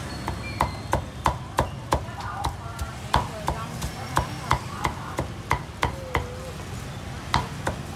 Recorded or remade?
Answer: recorded